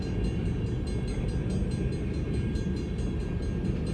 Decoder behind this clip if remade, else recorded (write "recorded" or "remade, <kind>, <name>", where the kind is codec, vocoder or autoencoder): recorded